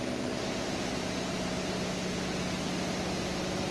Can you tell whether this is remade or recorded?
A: recorded